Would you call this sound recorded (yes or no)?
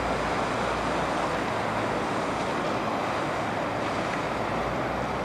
yes